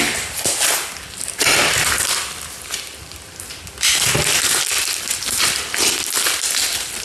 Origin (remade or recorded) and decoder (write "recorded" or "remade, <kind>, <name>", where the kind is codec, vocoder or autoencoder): recorded